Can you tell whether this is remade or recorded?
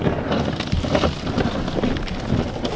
recorded